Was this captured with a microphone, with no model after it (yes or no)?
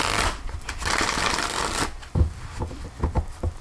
yes